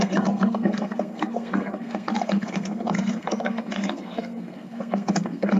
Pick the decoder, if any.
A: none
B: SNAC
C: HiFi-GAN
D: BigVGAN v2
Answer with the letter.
B